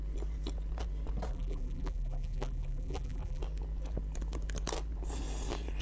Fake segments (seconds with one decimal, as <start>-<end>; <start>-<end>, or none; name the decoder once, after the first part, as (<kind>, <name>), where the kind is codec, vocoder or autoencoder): 1.3-3.4 (vocoder, BigVGAN v2)